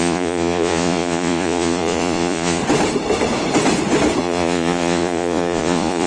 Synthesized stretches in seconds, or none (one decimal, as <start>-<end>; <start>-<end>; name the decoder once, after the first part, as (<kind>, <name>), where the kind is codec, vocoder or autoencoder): 0.0-2.6 (vocoder, Vocos); 4.2-6.1